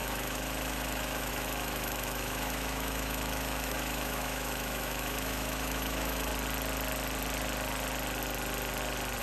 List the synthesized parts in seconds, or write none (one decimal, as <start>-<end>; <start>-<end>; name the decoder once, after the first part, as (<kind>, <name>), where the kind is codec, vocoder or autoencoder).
0.0-6.3 (autoencoder, DAC-VAE)